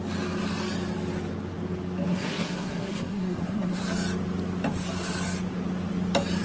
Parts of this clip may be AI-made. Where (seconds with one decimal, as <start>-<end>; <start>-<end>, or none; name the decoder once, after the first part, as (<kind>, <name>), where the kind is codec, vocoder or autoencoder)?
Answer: 2.1-3.8 (codec, SNAC)